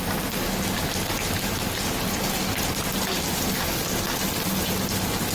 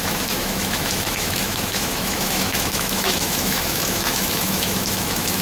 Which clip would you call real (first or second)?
first